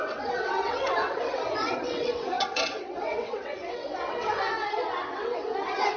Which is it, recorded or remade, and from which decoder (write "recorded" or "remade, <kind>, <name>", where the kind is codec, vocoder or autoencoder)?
remade, vocoder, WaveNeXt